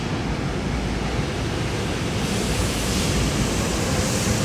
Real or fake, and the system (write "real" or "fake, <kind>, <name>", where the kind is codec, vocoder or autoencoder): real